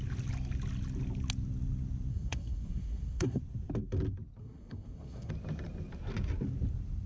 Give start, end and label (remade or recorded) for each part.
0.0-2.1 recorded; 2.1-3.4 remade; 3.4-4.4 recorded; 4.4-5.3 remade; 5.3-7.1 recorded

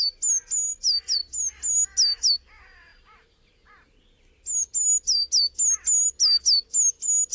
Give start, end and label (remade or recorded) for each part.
0.0-7.3 recorded